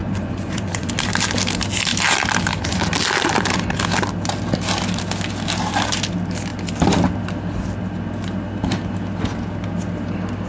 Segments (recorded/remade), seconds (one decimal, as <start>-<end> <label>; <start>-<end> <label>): 0.0-0.9 remade; 0.9-10.5 recorded